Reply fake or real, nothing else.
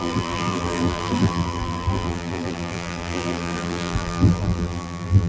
fake